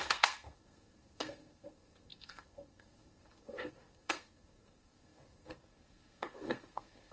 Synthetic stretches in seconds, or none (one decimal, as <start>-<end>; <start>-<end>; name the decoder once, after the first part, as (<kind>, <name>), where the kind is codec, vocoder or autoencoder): 0.0-7.1 (codec, SNAC)